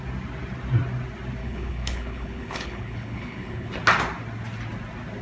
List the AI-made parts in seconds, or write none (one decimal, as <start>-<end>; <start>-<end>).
1.4-3.7